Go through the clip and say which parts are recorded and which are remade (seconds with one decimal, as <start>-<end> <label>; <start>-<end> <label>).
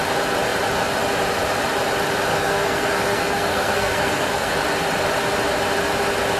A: 0.0-2.3 recorded; 2.3-4.5 remade; 4.5-6.4 recorded